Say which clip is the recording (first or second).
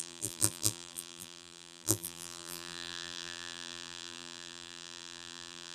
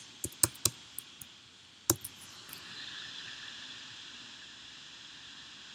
second